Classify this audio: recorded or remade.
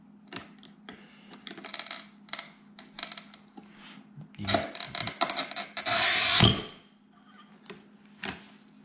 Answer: recorded